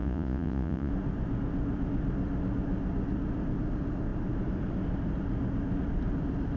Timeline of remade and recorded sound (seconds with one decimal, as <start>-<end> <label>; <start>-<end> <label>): 0.0-0.9 remade; 0.9-6.6 recorded